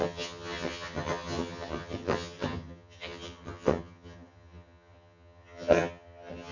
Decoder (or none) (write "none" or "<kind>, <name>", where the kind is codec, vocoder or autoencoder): vocoder, HiFi-GAN